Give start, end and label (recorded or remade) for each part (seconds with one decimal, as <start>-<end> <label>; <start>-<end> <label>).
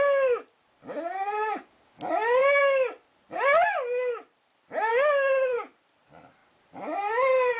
0.0-7.6 recorded